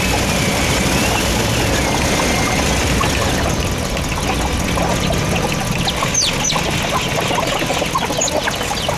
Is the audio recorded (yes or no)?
yes